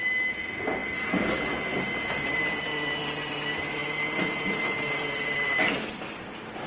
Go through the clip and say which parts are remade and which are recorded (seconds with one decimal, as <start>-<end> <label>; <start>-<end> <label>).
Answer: 0.0-6.7 recorded